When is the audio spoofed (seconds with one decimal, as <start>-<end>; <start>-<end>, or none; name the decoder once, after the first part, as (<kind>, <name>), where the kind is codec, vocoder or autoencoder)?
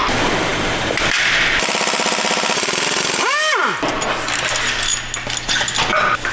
3.6-4.1 (vocoder, BigVGAN v2)